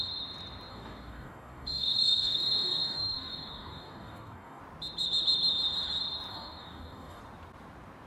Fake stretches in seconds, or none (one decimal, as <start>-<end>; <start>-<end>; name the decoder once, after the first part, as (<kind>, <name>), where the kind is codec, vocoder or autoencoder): 0.7-4.6 (codec, DAC); 6.3-7.2